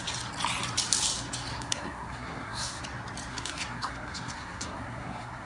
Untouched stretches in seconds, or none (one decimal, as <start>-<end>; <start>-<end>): 0.0-1.5; 2.8-3.3